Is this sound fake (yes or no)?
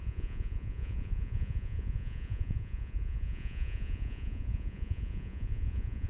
yes